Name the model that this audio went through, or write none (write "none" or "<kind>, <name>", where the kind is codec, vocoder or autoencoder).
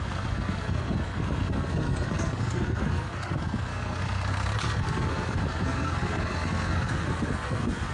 codec, SNAC